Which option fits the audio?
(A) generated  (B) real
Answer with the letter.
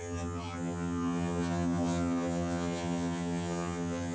A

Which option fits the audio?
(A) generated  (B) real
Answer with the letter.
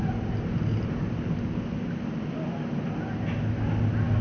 B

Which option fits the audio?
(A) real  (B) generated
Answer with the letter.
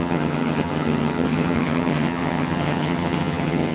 B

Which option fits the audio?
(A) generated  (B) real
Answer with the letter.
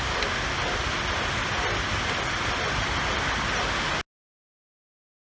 B